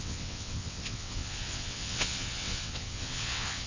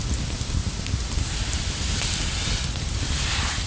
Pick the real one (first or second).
second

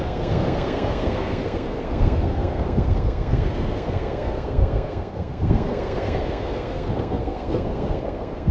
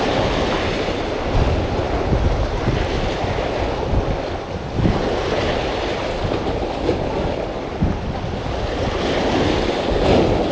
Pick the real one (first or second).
second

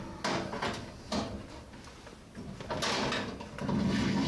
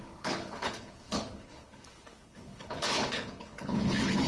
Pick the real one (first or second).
first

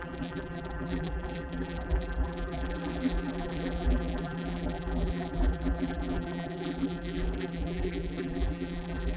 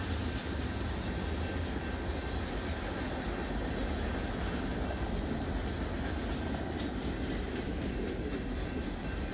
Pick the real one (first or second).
second